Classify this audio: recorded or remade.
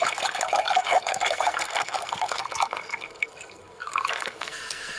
remade